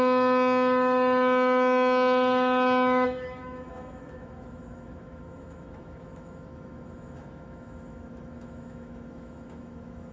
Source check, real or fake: fake